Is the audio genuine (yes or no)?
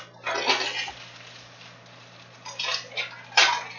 yes